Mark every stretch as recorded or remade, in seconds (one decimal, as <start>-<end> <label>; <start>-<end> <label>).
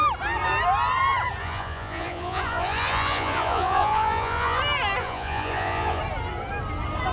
0.0-1.4 recorded; 1.4-4.6 remade; 4.6-5.0 recorded; 5.0-6.0 remade; 6.0-7.1 recorded